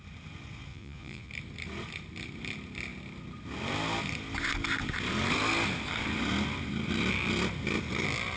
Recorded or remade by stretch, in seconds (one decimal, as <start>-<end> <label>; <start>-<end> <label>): 0.0-0.7 recorded; 0.7-1.3 remade; 1.3-8.4 recorded